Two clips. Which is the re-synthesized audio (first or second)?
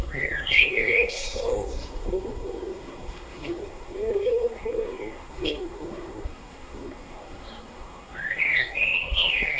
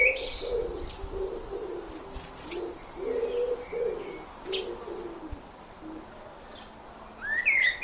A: first